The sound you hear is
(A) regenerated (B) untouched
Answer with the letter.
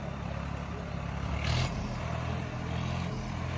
B